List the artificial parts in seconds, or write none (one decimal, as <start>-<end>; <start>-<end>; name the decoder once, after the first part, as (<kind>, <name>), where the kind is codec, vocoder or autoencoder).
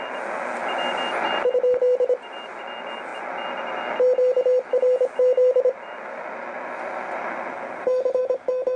none